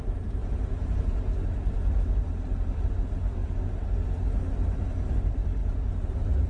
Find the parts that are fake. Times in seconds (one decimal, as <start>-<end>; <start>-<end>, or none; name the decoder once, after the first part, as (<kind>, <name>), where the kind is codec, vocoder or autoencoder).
0.0-5.6 (vocoder, BigVGAN v2); 6.1-6.5